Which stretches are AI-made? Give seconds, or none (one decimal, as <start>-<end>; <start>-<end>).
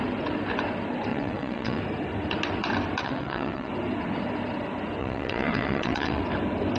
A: 1.1-1.8; 3.0-3.7; 5.0-6.2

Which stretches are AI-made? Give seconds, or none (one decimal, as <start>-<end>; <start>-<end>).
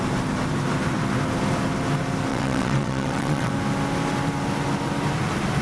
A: 2.3-3.5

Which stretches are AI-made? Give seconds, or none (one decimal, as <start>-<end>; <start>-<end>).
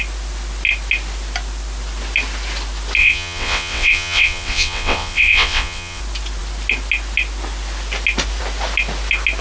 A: 3.0-6.0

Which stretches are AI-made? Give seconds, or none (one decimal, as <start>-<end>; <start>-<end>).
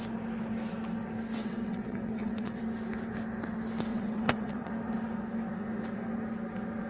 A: 1.4-2.6; 3.9-4.7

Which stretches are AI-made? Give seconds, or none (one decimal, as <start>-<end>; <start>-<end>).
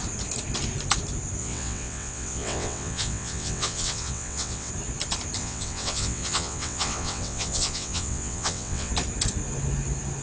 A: 1.4-4.7; 5.4-8.9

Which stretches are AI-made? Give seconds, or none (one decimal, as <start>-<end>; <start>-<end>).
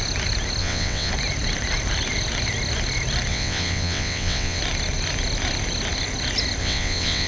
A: 0.6-1.1; 3.3-4.6; 6.6-7.3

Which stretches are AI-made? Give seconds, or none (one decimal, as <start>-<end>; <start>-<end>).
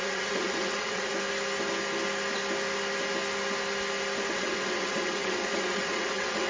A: 0.0-1.1; 4.3-6.5